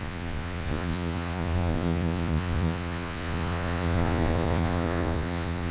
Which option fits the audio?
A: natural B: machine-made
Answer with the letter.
B